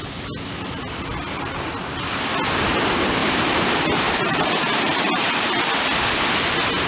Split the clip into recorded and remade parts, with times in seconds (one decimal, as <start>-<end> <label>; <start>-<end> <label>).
0.0-3.2 recorded; 3.2-5.0 remade; 5.0-6.9 recorded